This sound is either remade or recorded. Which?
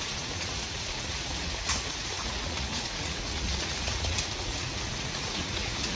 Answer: remade